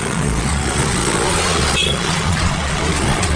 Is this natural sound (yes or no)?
no